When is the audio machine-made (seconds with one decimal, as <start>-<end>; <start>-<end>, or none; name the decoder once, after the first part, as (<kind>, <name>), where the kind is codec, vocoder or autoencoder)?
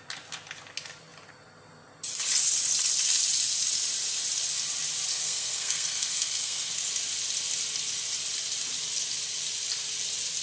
5.1-6.7 (codec, SNAC)